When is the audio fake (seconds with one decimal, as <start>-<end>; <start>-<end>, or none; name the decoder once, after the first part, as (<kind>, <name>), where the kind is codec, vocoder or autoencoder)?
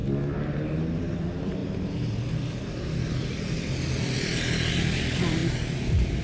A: 0.9-1.6 (vocoder, BigVGAN v2); 4.7-5.4